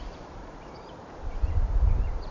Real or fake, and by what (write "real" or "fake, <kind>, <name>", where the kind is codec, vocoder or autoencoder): fake, vocoder, BigVGAN v2